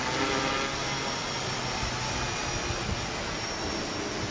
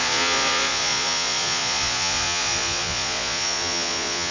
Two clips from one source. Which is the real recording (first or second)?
first